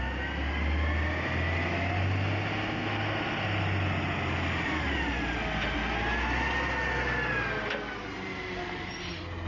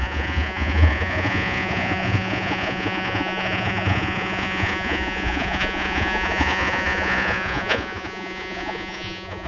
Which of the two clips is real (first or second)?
first